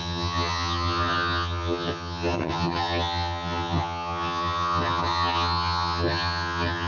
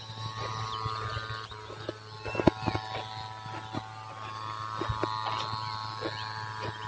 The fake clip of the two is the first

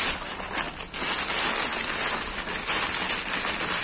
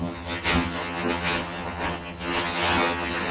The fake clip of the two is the second